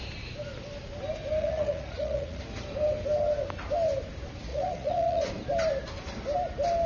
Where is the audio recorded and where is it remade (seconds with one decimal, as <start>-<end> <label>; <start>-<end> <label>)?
0.0-1.4 recorded; 1.4-2.4 remade; 2.4-4.5 recorded; 4.5-5.3 remade; 5.3-6.9 recorded